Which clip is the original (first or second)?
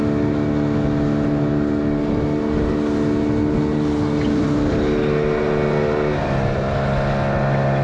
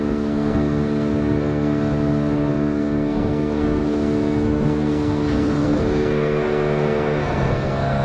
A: first